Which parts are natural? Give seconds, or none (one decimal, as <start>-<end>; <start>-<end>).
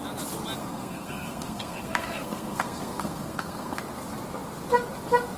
0.0-0.6; 3.8-5.4